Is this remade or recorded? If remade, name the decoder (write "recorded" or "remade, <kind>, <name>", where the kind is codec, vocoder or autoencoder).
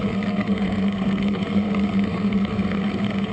remade, codec, SNAC